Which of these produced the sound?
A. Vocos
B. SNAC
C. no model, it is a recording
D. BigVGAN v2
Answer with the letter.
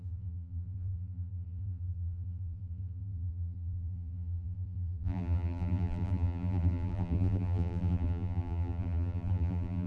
D